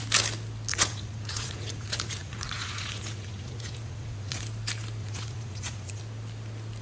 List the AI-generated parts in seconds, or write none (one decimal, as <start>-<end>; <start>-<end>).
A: 0.7-4.4; 5.0-6.0